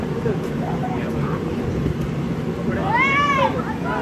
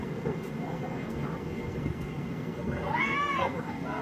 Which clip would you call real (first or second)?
first